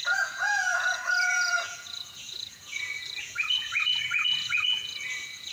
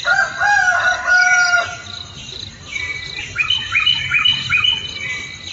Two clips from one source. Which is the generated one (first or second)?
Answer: first